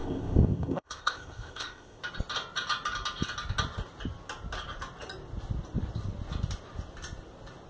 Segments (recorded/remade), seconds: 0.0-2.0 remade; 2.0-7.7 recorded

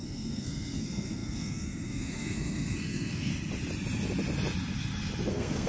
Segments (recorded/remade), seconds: 0.0-3.3 remade; 3.3-5.3 recorded; 5.3-5.7 remade

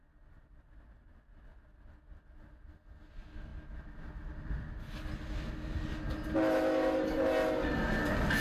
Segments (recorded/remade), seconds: 0.0-8.4 recorded

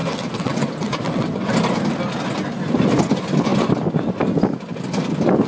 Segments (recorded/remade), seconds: 0.0-1.5 remade; 1.5-5.5 recorded

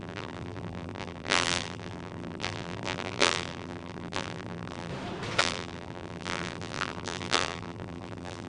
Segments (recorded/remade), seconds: 0.0-4.9 remade; 4.9-5.4 recorded; 5.4-8.5 remade

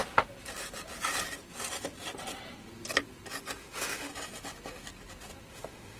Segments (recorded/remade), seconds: 0.0-3.6 recorded; 3.6-4.1 remade; 4.1-5.5 recorded; 5.5-6.0 remade

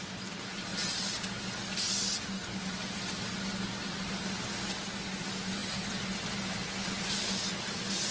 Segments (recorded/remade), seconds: 0.0-8.1 recorded